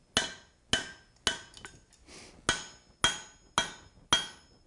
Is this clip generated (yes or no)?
no